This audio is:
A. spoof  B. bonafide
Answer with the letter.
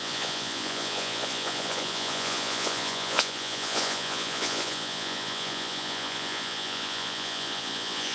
A